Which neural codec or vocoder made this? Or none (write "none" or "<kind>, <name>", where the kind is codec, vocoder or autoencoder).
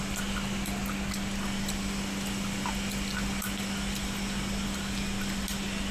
none